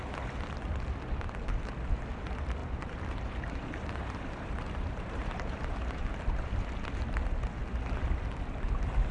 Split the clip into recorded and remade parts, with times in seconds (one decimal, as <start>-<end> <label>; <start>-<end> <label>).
0.0-2.6 recorded; 2.6-6.7 remade; 6.7-9.1 recorded